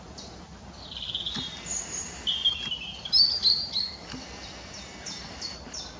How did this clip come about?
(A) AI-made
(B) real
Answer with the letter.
B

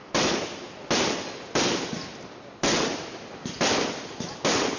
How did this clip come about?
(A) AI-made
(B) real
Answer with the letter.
B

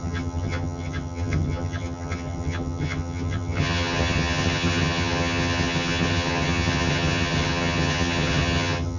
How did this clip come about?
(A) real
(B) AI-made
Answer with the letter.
B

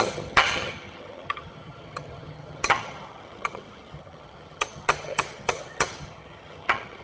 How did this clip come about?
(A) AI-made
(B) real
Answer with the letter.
A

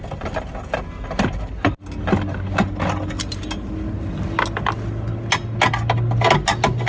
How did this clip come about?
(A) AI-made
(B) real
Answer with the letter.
B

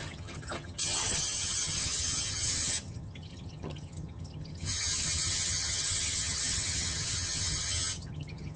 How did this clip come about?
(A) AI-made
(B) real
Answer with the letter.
A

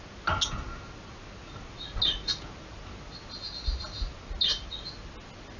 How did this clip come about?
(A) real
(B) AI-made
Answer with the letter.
A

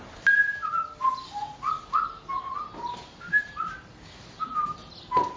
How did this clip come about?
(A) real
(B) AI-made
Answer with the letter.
A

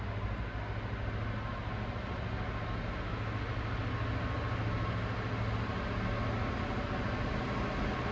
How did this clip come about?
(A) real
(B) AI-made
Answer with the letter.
A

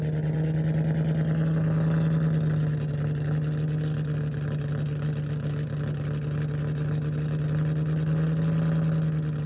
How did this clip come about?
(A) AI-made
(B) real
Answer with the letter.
B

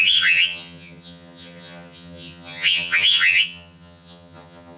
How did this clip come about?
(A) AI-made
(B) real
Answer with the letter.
A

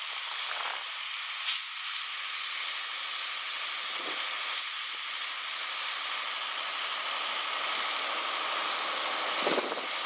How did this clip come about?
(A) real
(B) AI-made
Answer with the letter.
A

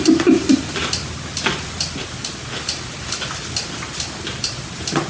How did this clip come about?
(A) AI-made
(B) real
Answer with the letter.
B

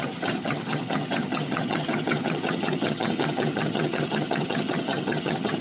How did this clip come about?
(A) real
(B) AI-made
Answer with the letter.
B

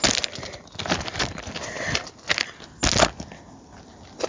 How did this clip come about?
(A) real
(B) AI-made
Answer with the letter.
A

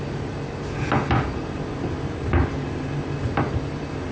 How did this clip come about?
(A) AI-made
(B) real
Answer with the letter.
B